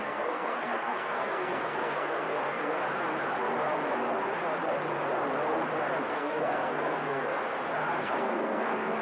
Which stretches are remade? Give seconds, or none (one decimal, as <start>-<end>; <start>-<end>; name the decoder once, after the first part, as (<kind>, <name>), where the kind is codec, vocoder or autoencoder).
0.0-2.8 (codec, SNAC); 6.1-7.4; 8.0-9.0

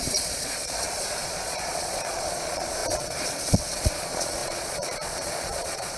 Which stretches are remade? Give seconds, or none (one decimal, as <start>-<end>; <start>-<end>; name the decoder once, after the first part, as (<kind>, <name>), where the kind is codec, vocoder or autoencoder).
0.0-6.0 (vocoder, Vocos)